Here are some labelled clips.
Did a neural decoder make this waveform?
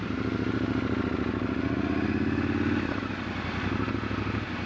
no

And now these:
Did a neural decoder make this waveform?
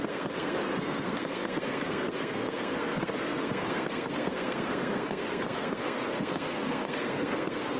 yes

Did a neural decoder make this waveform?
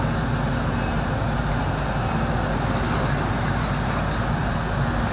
no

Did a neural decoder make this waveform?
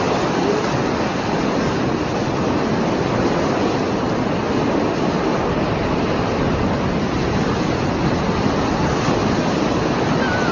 no